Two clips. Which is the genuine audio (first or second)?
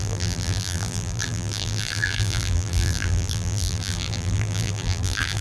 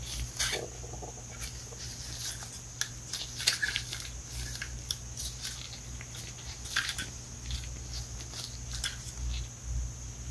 second